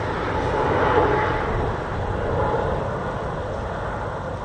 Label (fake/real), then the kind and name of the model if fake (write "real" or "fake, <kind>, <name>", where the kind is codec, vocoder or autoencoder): real